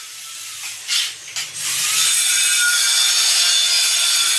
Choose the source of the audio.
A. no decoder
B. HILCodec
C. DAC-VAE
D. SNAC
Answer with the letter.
A